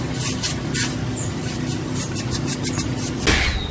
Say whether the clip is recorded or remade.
recorded